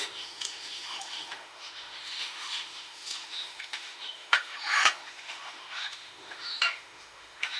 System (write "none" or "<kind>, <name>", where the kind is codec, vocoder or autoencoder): autoencoder, DAC-VAE